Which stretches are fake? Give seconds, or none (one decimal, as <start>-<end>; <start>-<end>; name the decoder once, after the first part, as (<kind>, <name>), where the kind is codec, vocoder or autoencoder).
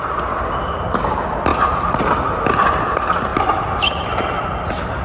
none